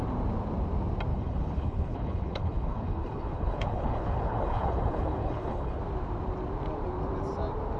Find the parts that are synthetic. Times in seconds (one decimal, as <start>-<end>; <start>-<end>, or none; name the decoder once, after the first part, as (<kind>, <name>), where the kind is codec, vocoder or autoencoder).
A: 1.1-5.8 (codec, HILCodec)